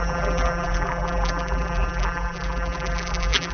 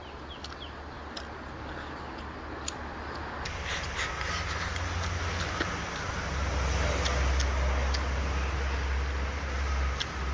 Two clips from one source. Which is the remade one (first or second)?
first